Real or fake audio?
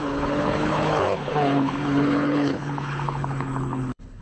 fake